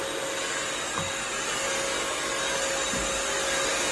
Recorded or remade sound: recorded